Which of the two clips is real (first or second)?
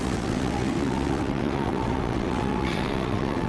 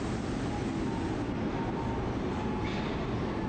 second